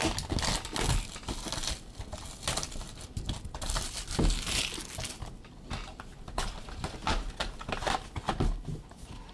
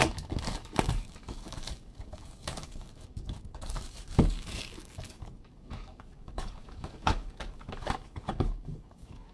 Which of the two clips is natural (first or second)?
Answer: first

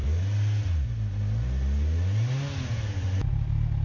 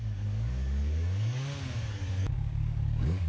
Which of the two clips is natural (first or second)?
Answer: first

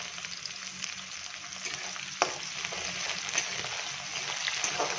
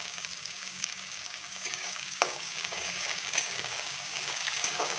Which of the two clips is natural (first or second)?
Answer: first